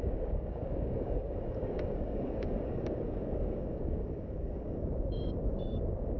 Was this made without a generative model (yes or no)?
no